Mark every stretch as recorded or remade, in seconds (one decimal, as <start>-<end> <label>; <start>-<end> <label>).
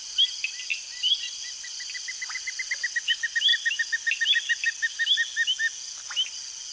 0.0-6.7 recorded